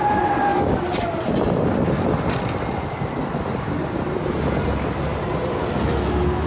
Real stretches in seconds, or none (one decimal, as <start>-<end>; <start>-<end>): 0.0-6.5